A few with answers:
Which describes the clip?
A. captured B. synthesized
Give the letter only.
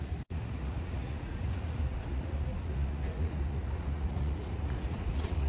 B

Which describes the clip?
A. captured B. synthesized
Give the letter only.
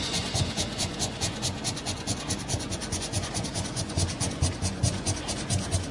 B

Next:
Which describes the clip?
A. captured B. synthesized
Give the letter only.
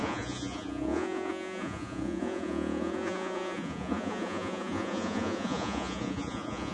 B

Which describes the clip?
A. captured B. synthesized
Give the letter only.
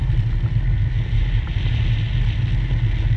A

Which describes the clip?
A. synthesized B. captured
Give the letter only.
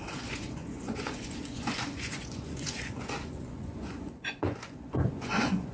A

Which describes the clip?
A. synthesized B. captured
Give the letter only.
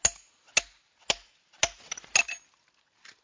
B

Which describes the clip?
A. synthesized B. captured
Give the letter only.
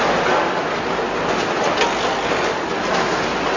B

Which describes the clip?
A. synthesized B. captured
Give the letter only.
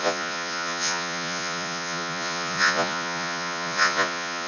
A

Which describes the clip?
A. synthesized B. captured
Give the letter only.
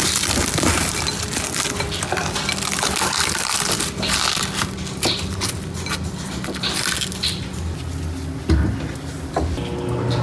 B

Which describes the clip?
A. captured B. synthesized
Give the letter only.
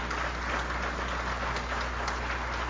A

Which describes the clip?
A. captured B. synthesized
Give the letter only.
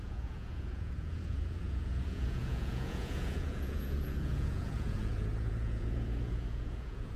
B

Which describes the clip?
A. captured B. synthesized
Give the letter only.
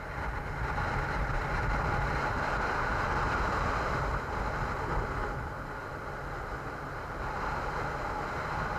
A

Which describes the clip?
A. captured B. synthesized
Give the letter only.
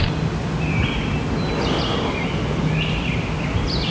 A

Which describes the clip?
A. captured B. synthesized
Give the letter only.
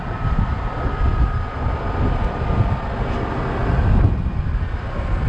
A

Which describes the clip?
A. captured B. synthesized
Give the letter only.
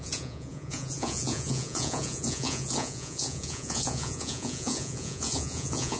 B